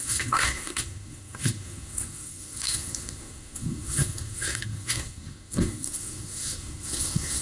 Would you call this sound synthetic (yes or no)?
yes